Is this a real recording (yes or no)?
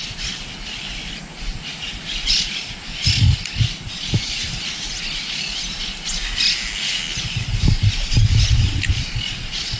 yes